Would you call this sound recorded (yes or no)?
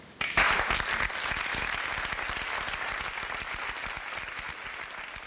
yes